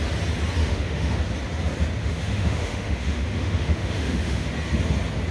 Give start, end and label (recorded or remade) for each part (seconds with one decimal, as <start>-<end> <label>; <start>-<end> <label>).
0.0-0.6 recorded; 0.6-1.2 remade; 1.2-2.0 recorded; 2.0-4.5 remade; 4.5-5.3 recorded